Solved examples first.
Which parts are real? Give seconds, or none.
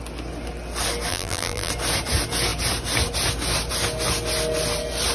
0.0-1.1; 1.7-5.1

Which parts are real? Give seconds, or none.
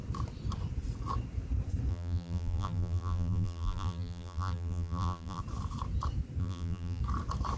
0.0-1.9; 5.4-6.4; 7.0-7.6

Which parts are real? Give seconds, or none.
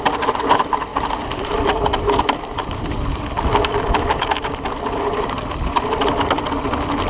0.0-0.9; 4.8-7.1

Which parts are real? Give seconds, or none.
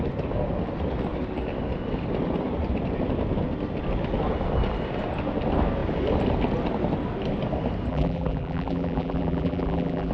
0.0-7.9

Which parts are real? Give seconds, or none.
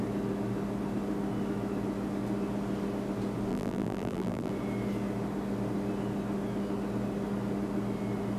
0.0-3.5; 4.5-8.4